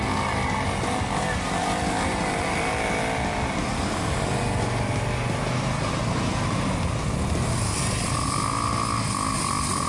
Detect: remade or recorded recorded